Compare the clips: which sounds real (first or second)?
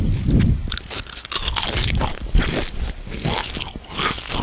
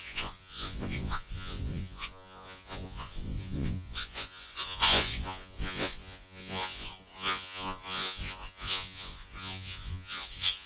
first